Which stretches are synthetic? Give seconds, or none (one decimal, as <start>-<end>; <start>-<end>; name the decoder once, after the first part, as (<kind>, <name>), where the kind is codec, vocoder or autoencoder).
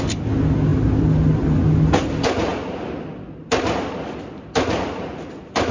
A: none